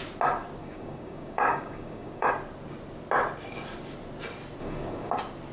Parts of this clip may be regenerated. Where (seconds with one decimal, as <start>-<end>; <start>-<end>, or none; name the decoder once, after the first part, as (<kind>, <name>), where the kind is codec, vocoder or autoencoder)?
0.6-2.3 (codec, DAC); 4.6-5.1